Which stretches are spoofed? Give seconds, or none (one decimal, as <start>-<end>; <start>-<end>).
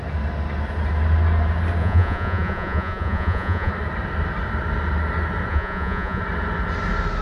1.8-3.7; 5.5-6.2